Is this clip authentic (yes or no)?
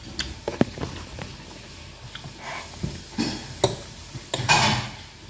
yes